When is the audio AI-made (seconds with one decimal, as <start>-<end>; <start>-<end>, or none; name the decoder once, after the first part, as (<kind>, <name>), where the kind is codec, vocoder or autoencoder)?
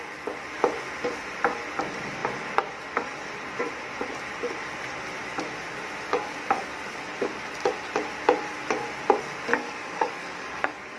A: 9.5-11.0 (codec, DAC)